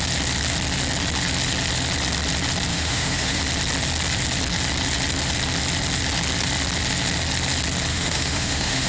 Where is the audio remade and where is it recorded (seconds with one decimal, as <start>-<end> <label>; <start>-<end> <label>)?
0.0-2.7 recorded; 2.7-3.4 remade; 3.4-7.9 recorded; 7.9-8.9 remade